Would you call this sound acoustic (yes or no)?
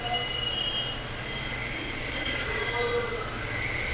yes